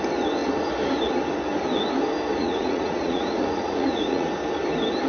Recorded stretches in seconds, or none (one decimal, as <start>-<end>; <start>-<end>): 0.0-2.4; 4.3-5.1